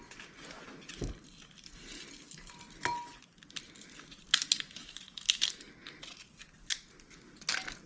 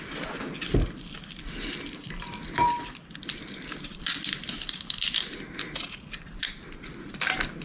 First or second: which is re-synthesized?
second